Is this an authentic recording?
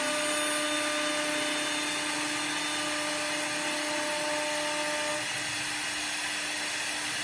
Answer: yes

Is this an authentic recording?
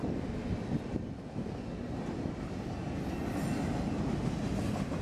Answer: yes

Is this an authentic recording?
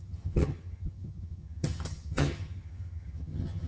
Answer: no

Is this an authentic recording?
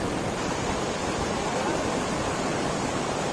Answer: yes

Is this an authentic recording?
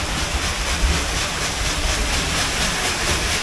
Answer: yes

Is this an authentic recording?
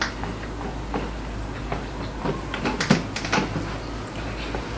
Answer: yes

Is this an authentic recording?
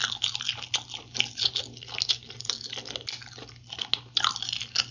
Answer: yes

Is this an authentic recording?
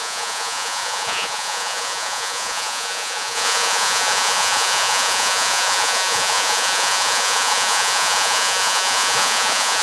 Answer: no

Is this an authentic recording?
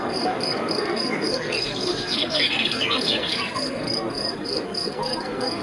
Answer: no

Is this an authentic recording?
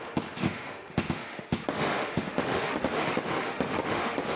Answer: no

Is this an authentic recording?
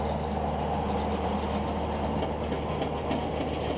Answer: yes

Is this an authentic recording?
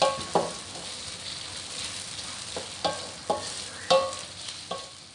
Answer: yes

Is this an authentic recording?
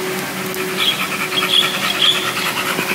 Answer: yes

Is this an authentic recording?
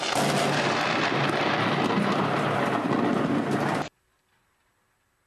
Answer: yes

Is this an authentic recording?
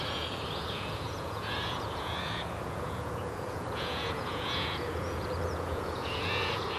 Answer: no